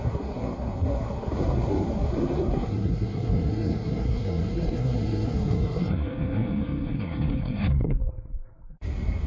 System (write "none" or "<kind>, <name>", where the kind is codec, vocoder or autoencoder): codec, SNAC